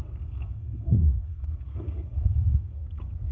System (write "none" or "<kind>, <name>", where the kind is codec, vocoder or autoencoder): codec, SNAC